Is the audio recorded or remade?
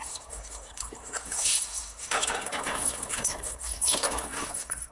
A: remade